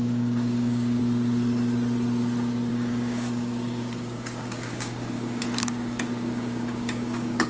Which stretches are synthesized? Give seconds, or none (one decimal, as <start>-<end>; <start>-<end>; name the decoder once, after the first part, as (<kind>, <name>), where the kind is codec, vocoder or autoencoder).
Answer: 0.0-1.0 (codec, DAC); 2.7-7.5